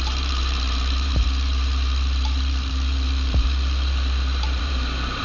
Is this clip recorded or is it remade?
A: remade